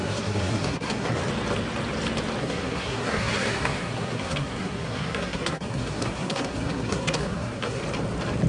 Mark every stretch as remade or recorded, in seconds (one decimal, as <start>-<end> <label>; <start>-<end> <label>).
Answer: 0.0-1.2 remade; 1.2-2.4 recorded; 2.4-7.8 remade; 7.8-8.5 recorded